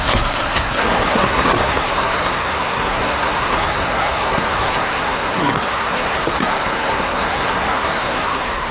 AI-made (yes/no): yes